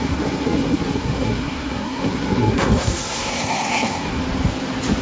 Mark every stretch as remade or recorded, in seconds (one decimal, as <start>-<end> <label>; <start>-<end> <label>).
0.0-4.2 remade; 4.2-5.0 recorded